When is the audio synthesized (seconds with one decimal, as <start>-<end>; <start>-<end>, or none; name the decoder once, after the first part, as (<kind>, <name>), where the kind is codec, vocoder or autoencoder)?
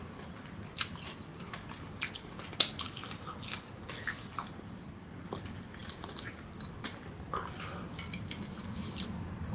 0.0-1.3 (vocoder, BigVGAN v2); 4.5-9.5